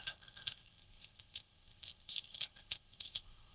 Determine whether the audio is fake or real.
fake